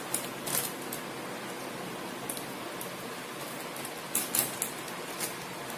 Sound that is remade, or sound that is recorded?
recorded